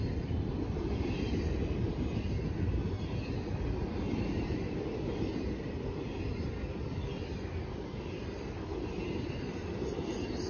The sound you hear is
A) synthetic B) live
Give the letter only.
B